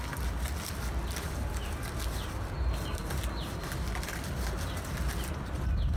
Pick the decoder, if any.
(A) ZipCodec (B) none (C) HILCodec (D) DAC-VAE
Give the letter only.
B